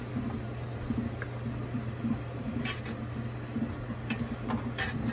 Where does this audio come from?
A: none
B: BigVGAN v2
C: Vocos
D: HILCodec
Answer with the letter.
A